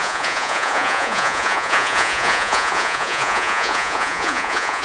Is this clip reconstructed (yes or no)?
yes